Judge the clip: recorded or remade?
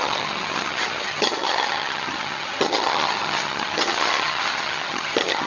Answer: remade